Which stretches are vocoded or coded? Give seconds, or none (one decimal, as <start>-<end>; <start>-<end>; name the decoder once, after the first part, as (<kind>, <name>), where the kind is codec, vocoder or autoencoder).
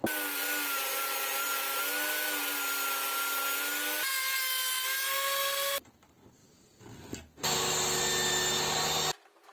none